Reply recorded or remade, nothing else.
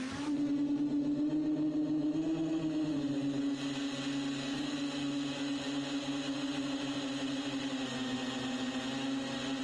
recorded